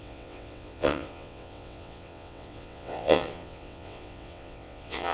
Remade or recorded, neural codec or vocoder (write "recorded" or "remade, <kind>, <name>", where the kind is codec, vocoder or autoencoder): remade, vocoder, WaveNeXt